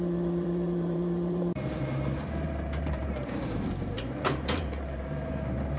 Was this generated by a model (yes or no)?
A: yes